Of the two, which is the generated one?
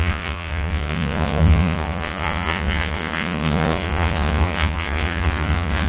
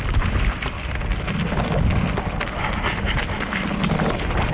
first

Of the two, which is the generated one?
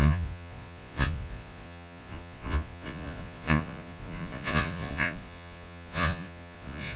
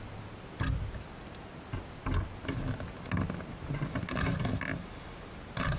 first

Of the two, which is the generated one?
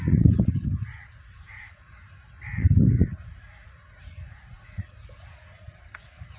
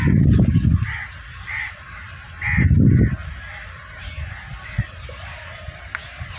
first